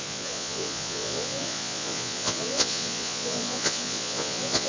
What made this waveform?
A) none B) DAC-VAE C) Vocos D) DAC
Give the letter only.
C